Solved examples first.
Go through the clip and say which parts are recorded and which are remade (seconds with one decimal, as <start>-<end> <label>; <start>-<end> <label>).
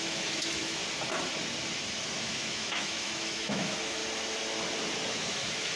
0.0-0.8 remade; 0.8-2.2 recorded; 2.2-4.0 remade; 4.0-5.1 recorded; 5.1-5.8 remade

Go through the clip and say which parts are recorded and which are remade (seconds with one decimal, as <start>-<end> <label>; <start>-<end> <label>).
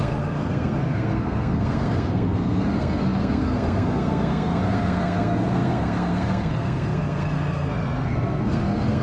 0.0-9.0 remade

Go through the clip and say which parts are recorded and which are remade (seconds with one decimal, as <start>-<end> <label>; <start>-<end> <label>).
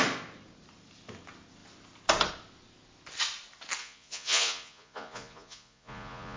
0.0-3.8 recorded; 3.8-6.4 remade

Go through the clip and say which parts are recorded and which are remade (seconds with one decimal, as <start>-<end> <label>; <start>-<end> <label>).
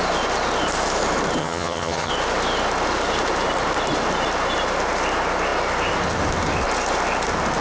0.0-1.4 recorded; 1.4-2.1 remade; 2.1-7.6 recorded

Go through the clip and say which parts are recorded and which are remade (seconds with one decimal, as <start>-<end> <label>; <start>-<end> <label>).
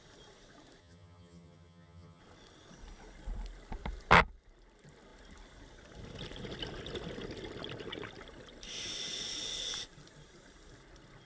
0.0-0.8 recorded; 0.8-2.2 remade; 2.2-11.2 recorded